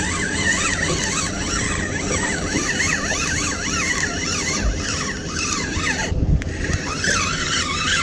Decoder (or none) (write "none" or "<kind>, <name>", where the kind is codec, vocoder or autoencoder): none